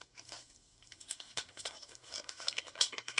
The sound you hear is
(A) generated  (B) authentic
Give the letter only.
A